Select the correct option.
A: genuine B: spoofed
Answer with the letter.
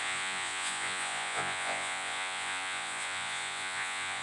B